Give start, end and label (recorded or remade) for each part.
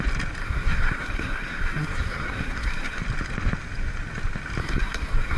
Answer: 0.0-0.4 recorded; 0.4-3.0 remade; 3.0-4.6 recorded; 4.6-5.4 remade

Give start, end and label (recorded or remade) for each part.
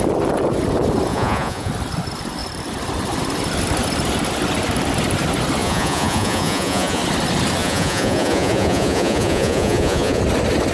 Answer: 0.0-1.1 recorded; 1.1-1.7 remade; 1.7-5.6 recorded; 5.6-7.0 remade; 7.0-7.6 recorded; 7.6-10.2 remade; 10.2-10.7 recorded